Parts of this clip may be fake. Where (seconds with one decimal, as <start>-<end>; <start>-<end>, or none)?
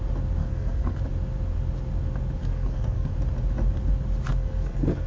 0.4-1.0; 2.4-3.1; 4.3-5.1